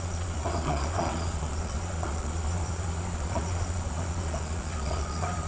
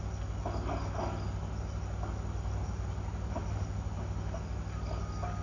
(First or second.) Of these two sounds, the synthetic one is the first